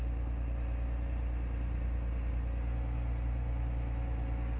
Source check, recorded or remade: recorded